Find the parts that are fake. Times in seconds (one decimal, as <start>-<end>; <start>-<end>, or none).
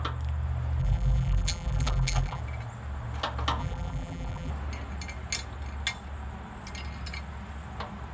0.8-2.4; 3.6-4.5